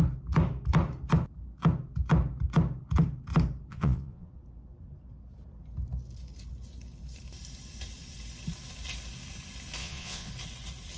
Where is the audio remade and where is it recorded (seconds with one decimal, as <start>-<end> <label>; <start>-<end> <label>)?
0.0-3.7 recorded; 3.7-4.3 remade; 4.3-9.8 recorded; 9.8-10.3 remade; 10.3-11.0 recorded